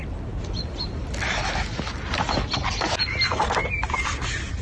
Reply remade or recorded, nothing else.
recorded